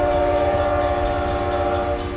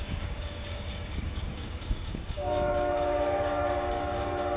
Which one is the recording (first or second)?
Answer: first